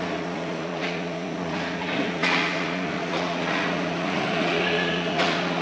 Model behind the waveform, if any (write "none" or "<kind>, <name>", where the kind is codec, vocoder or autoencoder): vocoder, Vocos